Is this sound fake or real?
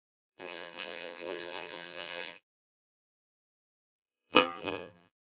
fake